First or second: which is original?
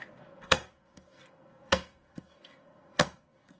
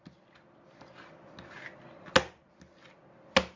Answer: second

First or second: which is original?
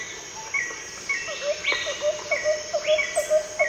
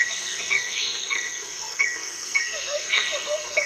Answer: first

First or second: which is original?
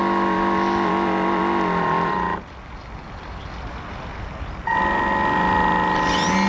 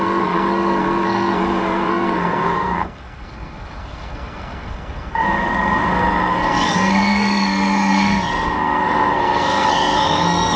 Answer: first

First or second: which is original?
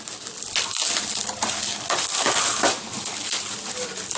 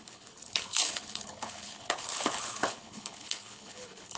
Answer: first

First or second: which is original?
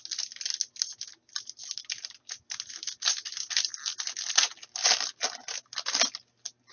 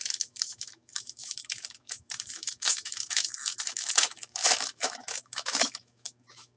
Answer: first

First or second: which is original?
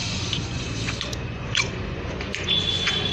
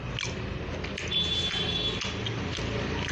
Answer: second